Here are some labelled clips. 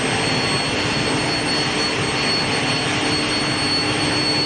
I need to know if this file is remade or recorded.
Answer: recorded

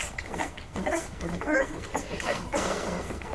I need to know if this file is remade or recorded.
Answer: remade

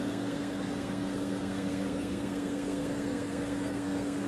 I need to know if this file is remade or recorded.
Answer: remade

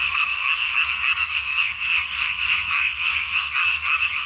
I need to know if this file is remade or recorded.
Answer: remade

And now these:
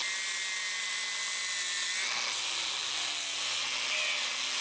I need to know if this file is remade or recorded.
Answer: recorded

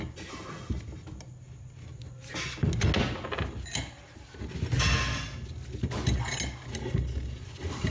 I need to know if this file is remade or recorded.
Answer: recorded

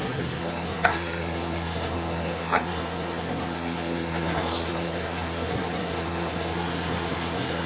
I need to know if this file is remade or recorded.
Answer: remade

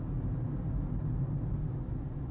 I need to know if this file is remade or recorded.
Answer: recorded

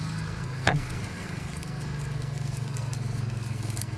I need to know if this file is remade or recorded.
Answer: remade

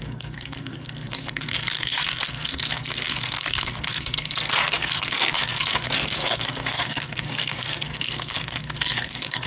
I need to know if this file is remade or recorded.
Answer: remade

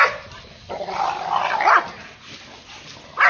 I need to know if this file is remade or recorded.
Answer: recorded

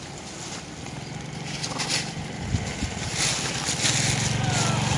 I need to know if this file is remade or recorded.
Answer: recorded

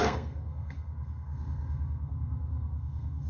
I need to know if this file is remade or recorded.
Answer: remade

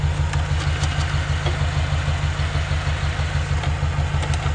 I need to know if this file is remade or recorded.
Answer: recorded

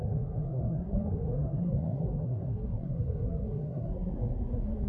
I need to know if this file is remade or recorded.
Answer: remade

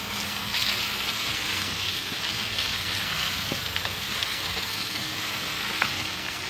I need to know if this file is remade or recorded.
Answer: remade